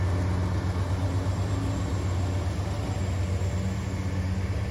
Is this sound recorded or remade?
recorded